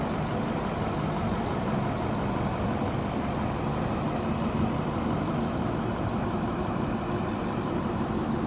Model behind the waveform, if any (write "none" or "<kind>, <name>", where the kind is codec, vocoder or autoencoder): none